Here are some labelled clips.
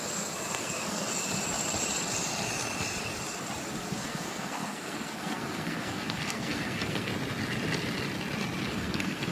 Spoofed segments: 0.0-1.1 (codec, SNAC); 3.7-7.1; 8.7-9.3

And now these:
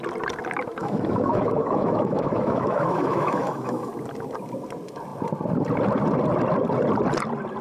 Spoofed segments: 0.8-3.9 (autoencoder, DAC-VAE)